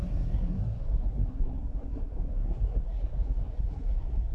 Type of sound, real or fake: fake